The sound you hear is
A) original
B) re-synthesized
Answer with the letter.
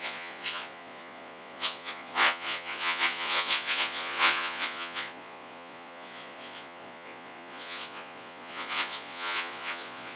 B